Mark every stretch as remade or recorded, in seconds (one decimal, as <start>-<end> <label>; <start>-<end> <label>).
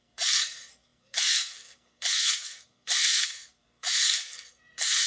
0.0-5.1 remade